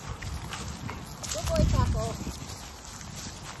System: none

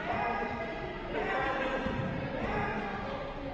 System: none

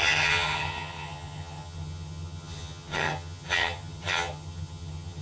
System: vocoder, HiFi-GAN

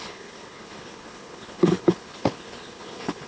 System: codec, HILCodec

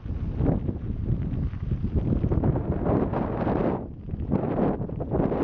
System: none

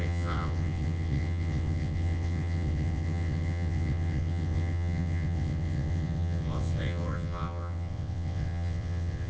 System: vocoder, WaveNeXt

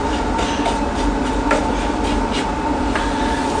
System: none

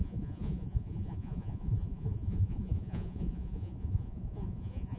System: vocoder, Vocos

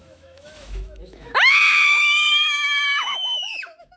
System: autoencoder, DAC-VAE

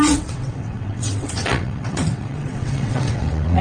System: vocoder, WaveNeXt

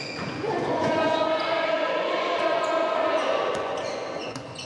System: vocoder, Vocos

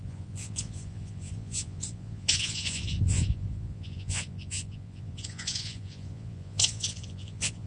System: vocoder, Vocos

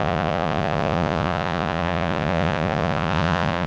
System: vocoder, Vocos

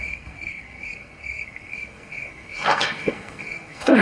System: codec, SNAC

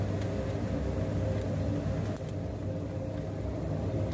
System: none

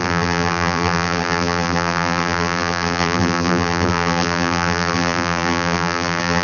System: vocoder, BigVGAN v2